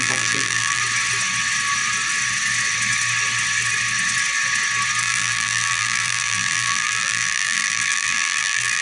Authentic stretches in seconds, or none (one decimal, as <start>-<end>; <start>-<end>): 0.8-5.0